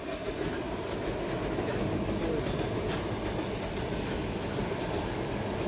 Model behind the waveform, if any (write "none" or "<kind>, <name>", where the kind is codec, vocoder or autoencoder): none